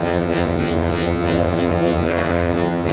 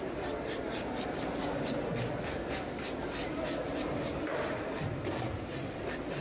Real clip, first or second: second